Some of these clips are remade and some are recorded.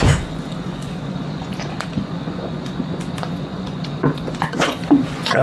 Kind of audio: remade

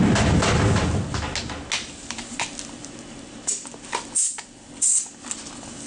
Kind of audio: recorded